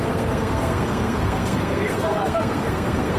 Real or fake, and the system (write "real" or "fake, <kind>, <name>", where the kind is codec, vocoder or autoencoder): fake, codec, SNAC